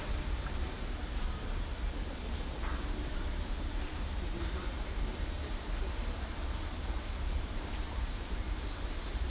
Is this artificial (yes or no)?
yes